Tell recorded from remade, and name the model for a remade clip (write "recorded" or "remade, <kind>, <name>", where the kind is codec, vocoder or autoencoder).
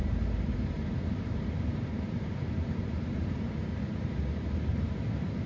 remade, vocoder, BigVGAN v2